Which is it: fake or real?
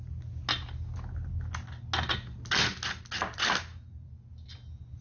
real